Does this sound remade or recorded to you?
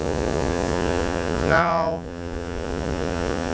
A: remade